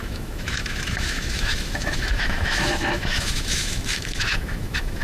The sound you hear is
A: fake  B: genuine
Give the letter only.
A